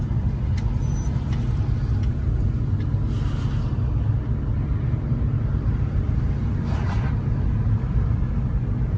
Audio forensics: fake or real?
real